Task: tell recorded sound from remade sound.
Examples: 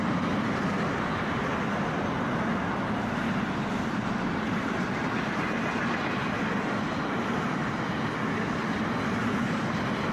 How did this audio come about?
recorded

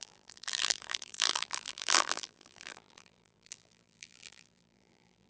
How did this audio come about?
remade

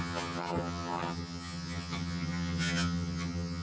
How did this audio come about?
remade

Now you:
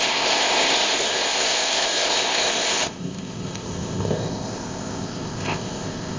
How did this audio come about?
remade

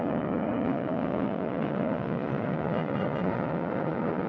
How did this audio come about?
remade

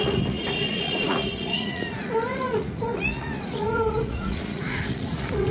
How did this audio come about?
remade